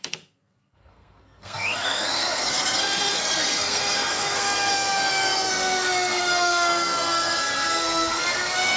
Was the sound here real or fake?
fake